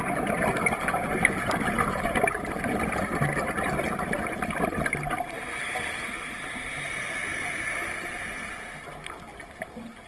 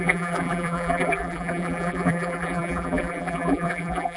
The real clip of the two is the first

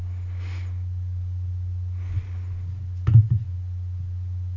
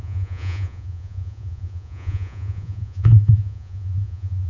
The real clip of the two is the first